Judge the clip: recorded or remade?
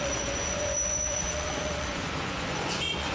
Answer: remade